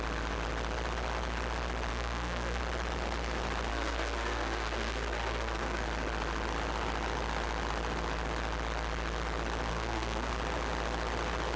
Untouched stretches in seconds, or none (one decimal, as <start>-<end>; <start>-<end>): 0.0-1.9; 2.6-3.7; 5.8-9.7; 10.3-11.6